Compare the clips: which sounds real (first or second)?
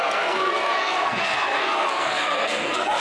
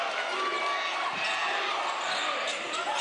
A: second